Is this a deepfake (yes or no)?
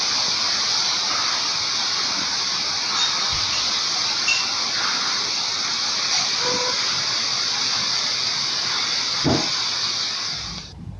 no